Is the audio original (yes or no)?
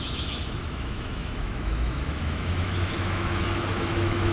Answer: no